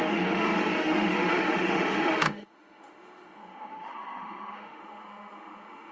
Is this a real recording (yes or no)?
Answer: no